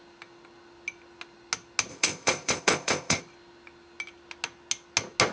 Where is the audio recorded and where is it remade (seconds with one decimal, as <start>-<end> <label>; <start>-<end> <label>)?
0.0-1.9 recorded; 1.9-3.2 remade; 3.2-5.3 recorded